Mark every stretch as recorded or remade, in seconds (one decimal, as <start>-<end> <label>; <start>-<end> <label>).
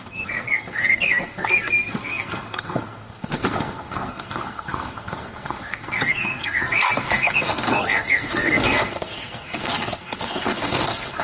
0.0-11.2 remade